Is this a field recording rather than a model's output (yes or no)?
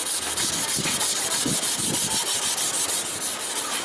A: yes